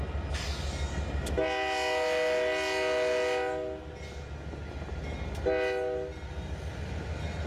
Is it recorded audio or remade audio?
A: recorded